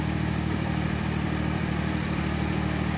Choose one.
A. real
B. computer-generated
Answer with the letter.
B